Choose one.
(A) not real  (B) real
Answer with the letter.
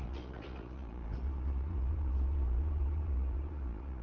A